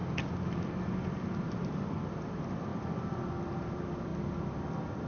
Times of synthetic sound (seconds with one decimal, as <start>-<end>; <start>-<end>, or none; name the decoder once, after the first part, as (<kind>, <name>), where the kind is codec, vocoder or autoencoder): 1.3-2.7 (vocoder, BigVGAN v2); 3.5-4.1